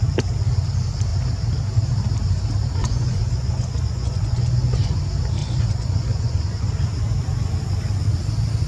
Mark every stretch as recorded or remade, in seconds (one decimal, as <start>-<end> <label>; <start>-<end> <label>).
0.0-2.8 recorded; 2.8-5.0 remade; 5.0-5.4 recorded; 5.4-6.7 remade; 6.7-8.7 recorded